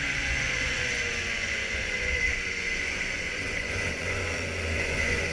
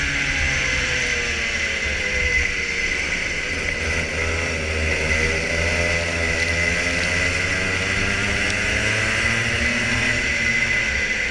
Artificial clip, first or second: first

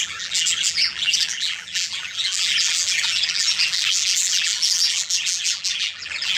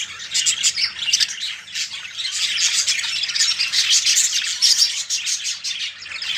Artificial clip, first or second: first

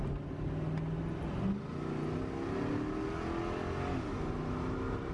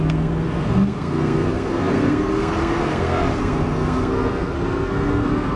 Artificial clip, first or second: second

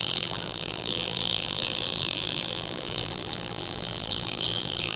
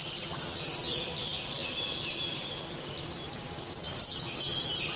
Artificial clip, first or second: first